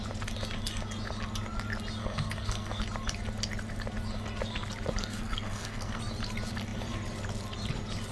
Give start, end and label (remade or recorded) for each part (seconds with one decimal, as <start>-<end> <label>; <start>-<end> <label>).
0.0-2.0 recorded; 2.0-2.8 remade; 2.8-5.0 recorded; 5.0-6.0 remade; 6.0-8.1 recorded